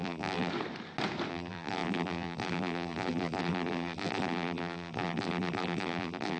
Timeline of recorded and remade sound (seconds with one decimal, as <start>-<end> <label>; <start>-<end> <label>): 0.0-0.5 remade; 0.5-1.3 recorded; 1.3-6.4 remade